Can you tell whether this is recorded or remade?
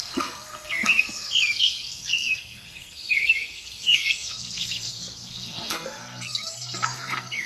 remade